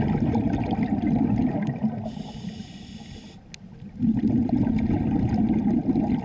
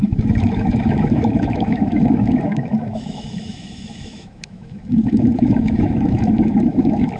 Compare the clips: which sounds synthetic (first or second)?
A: second